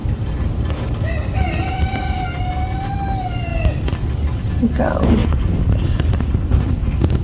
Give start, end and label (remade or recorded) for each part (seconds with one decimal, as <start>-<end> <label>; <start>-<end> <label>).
0.0-0.8 remade; 0.8-5.2 recorded; 5.2-6.3 remade; 6.3-7.2 recorded